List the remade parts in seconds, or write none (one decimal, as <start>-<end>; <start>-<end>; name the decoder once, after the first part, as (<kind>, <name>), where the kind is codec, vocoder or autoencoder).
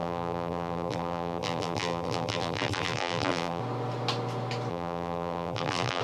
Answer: 0.0-3.6 (vocoder, BigVGAN v2); 4.7-6.0